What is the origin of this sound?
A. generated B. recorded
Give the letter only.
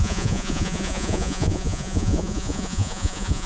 A